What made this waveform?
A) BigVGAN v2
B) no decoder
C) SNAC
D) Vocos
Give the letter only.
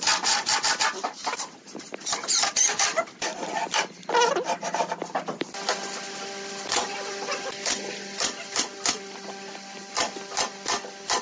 B